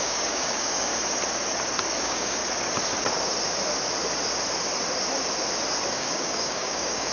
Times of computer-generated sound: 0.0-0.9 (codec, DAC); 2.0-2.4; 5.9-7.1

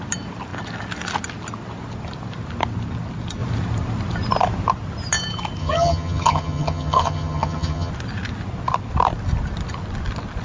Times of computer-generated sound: 5.6-7.9 (vocoder, HiFi-GAN)